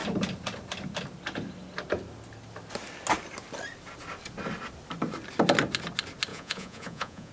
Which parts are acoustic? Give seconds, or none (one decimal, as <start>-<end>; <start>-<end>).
0.0-6.3